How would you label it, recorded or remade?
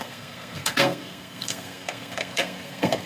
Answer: remade